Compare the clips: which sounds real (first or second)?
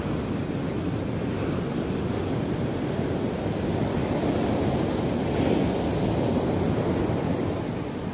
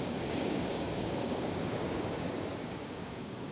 first